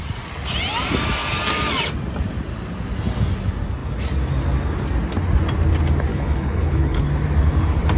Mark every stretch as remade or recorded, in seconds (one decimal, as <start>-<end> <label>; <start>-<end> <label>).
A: 0.0-6.1 recorded; 6.1-7.0 remade; 7.0-8.0 recorded

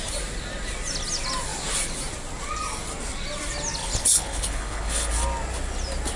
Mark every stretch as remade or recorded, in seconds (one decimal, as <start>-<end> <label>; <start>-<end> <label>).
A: 0.0-3.8 recorded; 3.8-5.1 remade; 5.1-6.2 recorded

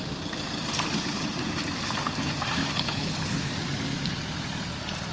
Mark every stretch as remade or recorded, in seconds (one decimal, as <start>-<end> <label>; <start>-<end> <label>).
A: 0.0-2.6 recorded; 2.6-3.3 remade; 3.3-5.1 recorded

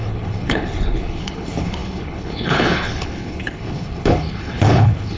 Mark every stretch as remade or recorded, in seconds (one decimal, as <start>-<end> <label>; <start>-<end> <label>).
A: 0.0-5.2 remade

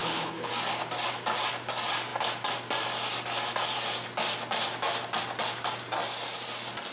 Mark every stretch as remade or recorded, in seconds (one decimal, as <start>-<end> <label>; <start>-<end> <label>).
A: 0.0-0.5 remade; 0.5-6.9 recorded

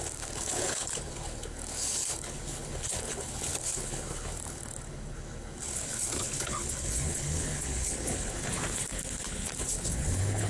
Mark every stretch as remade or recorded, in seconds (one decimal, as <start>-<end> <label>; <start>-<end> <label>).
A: 0.0-10.5 remade

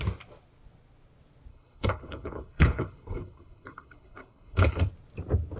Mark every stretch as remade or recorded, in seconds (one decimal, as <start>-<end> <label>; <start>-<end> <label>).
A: 0.0-1.5 recorded; 1.5-4.9 remade; 4.9-5.6 recorded